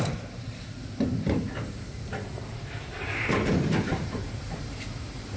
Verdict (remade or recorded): remade